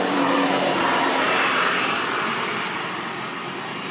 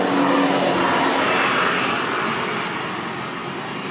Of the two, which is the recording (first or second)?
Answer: second